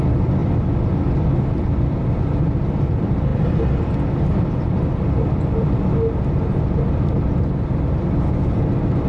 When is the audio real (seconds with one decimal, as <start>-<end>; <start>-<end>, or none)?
0.0-9.1

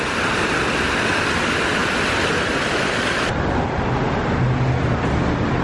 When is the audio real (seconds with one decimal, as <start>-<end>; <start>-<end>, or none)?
0.0-5.6